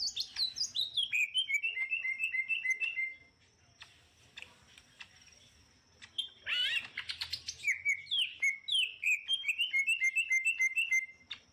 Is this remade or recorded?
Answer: recorded